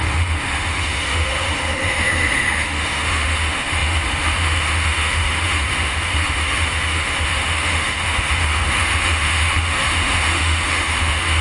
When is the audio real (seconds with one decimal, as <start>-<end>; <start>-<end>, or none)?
none